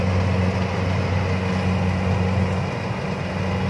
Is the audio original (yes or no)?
yes